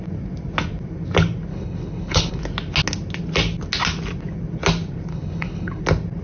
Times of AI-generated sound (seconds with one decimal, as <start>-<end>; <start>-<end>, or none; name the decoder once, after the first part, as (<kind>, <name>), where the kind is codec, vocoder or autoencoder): 1.5-2.4 (codec, HILCodec); 5.1-5.8